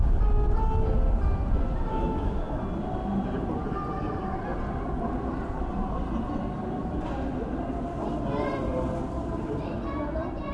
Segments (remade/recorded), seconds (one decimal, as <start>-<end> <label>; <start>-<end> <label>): 0.0-1.9 recorded; 1.9-2.6 remade; 2.6-10.5 recorded